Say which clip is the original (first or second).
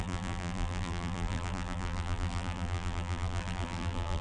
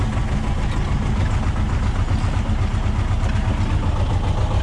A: second